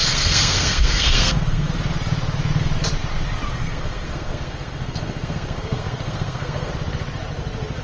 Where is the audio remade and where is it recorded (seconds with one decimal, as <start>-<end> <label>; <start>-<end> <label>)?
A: 0.0-1.7 remade; 1.7-3.6 recorded; 3.6-6.7 remade; 6.7-7.8 recorded